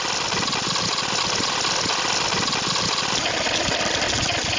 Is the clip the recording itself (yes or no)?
yes